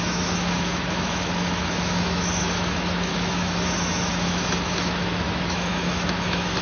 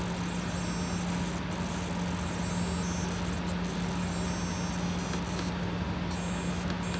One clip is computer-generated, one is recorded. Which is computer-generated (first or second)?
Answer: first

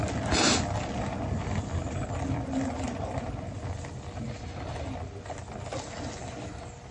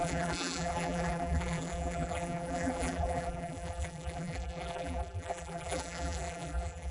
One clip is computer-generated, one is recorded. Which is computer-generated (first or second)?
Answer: second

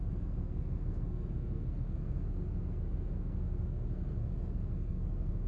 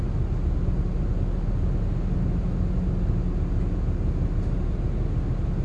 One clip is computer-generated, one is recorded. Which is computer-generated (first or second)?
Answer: first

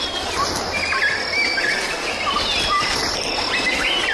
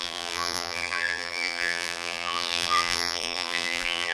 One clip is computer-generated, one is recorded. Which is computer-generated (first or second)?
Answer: second